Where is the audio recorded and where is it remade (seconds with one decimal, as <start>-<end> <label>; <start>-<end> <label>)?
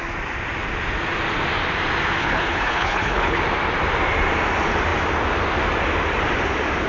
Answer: 0.0-2.2 recorded; 2.2-3.4 remade; 3.4-6.9 recorded